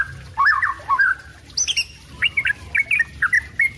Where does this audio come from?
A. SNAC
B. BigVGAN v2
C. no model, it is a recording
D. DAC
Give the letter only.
C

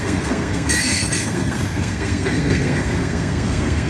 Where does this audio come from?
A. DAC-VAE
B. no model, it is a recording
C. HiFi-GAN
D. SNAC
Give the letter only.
D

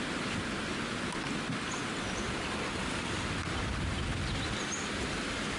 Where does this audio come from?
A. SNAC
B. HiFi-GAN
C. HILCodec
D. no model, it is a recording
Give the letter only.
D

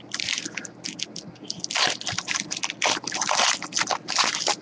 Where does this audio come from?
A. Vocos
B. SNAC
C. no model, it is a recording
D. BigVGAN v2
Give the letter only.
C